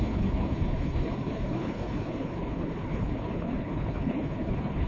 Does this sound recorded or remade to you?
remade